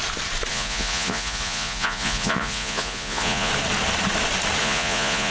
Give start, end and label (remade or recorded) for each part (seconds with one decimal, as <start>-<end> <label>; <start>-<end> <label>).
0.0-0.5 recorded; 0.5-3.5 remade; 3.5-4.6 recorded; 4.6-5.3 remade